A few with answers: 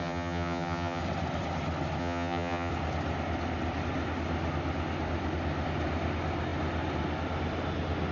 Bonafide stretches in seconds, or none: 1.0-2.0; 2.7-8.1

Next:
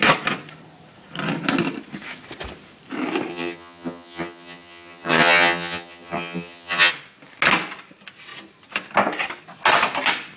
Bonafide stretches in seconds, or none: 0.0-3.3; 6.9-10.4

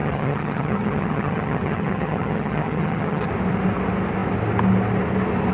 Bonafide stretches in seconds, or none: 3.3-5.5

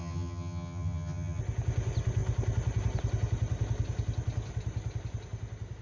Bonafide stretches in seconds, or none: 1.4-5.8

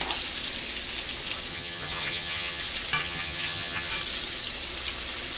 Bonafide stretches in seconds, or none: 0.0-1.5; 2.6-3.0; 3.9-5.4

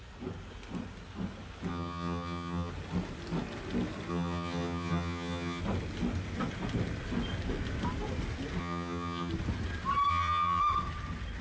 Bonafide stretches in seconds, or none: 0.0-1.7; 2.7-4.1; 5.6-8.6; 9.3-10.1; 10.6-11.4

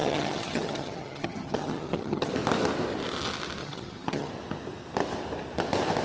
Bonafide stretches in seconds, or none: 2.3-3.6; 4.3-6.0